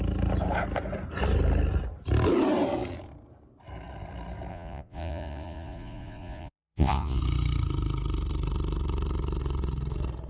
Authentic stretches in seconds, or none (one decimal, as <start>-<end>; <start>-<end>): 0.0-4.5; 7.2-10.3